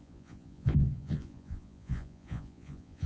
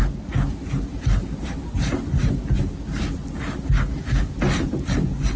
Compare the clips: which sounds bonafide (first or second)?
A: second